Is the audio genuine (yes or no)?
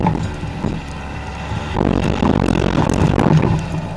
yes